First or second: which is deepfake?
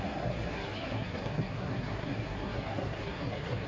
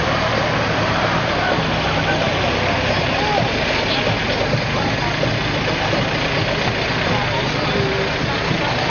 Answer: first